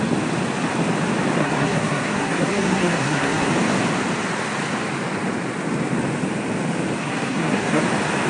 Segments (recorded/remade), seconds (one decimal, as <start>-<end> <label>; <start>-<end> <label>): 0.0-1.4 recorded; 1.4-3.5 remade; 3.5-7.0 recorded; 7.0-7.8 remade; 7.8-8.3 recorded